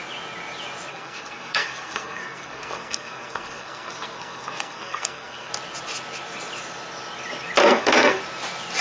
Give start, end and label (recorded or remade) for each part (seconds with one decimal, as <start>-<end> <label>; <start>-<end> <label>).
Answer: 0.0-0.9 recorded; 0.9-5.5 remade; 5.5-7.6 recorded; 7.6-8.2 remade; 8.2-8.8 recorded